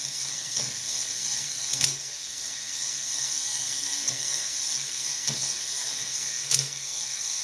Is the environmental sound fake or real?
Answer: fake